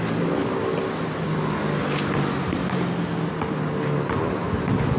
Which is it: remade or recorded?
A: recorded